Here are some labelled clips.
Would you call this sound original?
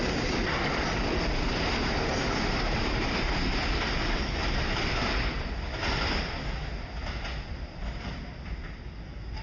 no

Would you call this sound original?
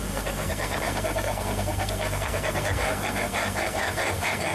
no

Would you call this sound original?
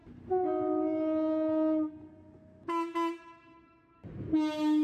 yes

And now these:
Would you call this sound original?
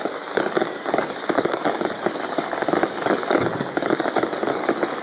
no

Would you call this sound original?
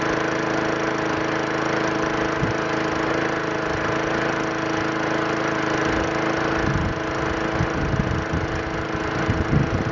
yes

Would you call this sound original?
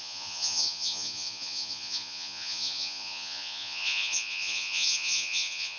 no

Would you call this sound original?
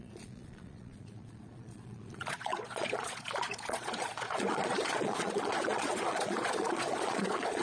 no